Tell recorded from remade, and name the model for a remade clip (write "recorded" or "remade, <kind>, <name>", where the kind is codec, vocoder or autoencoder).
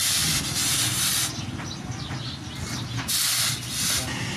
recorded